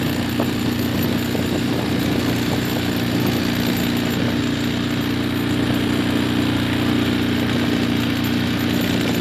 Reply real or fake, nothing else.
real